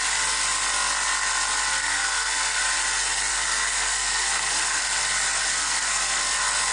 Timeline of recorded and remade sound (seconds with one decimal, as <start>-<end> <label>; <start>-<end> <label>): 0.0-1.8 recorded; 1.8-2.6 remade; 2.6-3.3 recorded; 3.3-4.8 remade; 4.8-5.6 recorded; 5.6-6.2 remade; 6.2-6.7 recorded